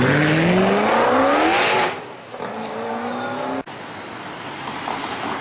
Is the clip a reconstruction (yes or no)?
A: no